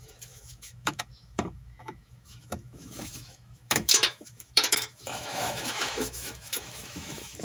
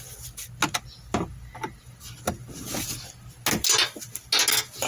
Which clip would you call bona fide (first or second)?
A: second